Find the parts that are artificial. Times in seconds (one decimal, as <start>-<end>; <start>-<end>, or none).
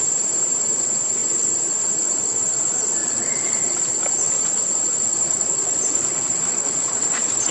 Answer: 3.0-3.9; 5.1-7.5